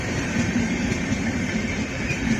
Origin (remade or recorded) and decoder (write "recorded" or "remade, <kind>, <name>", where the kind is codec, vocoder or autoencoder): remade, vocoder, BigVGAN v2